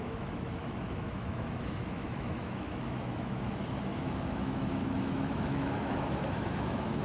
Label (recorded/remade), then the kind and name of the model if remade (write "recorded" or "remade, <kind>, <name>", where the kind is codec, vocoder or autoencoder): remade, autoencoder, DAC-VAE